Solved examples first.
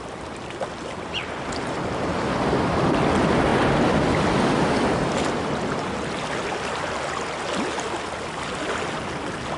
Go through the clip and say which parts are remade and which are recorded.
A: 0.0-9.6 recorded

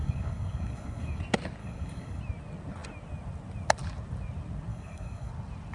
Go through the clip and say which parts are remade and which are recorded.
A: 0.0-1.2 remade; 1.2-1.6 recorded; 1.6-2.2 remade; 2.2-4.7 recorded; 4.7-5.3 remade; 5.3-5.7 recorded

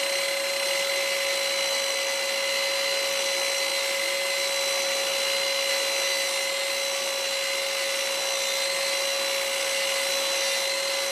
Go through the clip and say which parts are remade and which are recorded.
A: 0.0-11.1 recorded

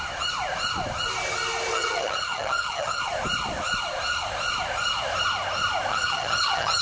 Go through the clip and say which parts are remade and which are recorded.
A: 0.0-1.7 recorded; 1.7-3.0 remade; 3.0-5.9 recorded; 5.9-6.8 remade

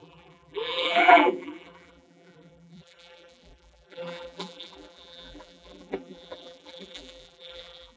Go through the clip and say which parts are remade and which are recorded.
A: 0.0-8.0 remade